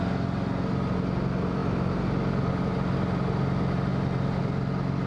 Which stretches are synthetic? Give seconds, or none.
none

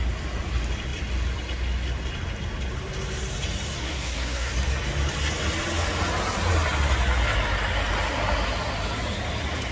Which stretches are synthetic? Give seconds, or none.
3.8-4.5 (codec, SNAC)

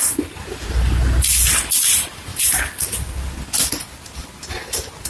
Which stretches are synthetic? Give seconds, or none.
none

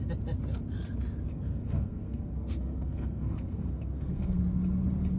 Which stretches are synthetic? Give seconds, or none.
1.3-4.4 (codec, SNAC)

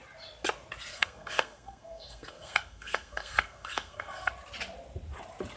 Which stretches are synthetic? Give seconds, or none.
0.9-4.3 (codec, SNAC)

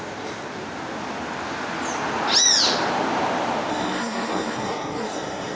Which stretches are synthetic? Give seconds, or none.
3.7-5.6 (codec, SNAC)